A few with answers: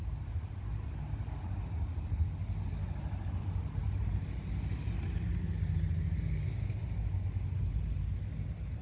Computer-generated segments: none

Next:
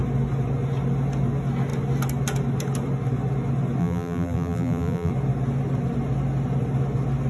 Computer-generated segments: 3.8-5.1 (vocoder, BigVGAN v2)

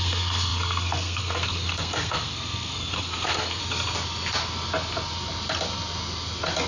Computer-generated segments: 0.0-3.6 (codec, SNAC)

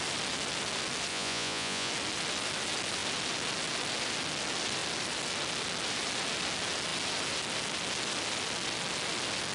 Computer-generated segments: 1.1-1.9 (vocoder, Vocos)

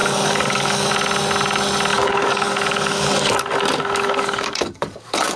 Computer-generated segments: 0.0-0.9 (codec, DAC); 1.9-5.4

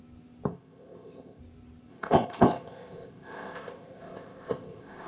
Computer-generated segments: 0.5-1.4 (codec, ZipCodec); 1.9-5.1

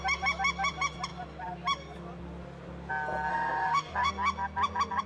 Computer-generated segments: 3.3-4.1 (codec, SNAC)